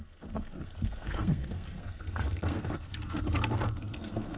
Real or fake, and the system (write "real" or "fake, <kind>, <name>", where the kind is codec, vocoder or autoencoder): fake, codec, SNAC